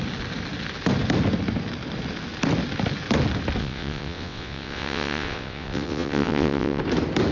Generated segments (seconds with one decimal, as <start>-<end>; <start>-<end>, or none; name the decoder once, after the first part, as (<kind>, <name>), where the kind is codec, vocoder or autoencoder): 3.6-6.8 (vocoder, WaveNeXt)